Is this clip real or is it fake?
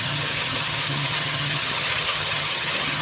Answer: fake